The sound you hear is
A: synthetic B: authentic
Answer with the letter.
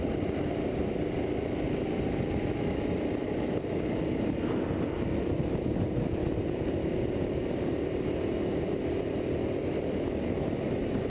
B